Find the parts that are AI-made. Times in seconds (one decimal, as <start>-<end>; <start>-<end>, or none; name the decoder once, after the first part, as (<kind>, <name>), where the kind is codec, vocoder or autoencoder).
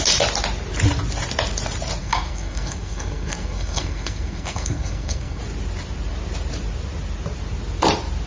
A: 2.0-5.4 (codec, SNAC)